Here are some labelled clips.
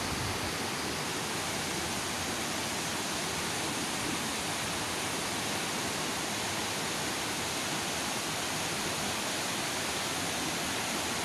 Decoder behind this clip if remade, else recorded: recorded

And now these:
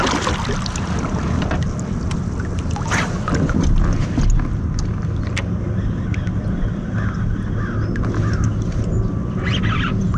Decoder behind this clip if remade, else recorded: recorded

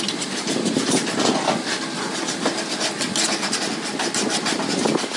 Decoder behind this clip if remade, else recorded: remade, vocoder, BigVGAN v2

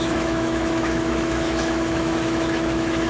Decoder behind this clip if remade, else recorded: remade, autoencoder, DAC-VAE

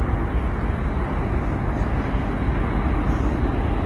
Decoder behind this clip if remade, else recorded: recorded